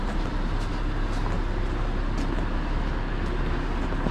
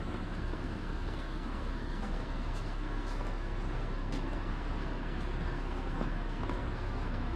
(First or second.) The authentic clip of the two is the first